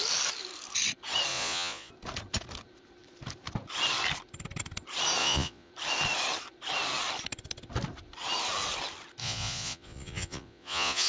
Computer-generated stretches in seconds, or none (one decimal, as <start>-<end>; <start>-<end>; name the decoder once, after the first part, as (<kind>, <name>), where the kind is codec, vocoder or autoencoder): 1.3-1.9 (vocoder, Vocos); 5.2-5.7; 9.2-11.1